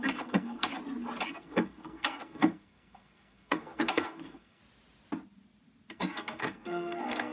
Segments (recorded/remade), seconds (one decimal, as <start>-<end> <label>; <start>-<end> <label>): 0.0-0.7 remade; 0.7-1.3 recorded; 1.3-4.6 remade; 4.6-5.9 recorded; 5.9-7.3 remade